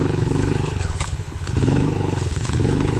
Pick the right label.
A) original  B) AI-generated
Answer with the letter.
B